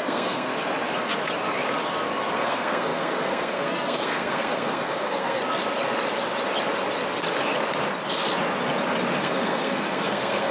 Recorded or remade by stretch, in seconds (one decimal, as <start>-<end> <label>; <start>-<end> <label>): 0.0-0.5 remade; 0.5-2.3 recorded; 2.3-5.4 remade; 5.4-9.2 recorded; 9.2-10.5 remade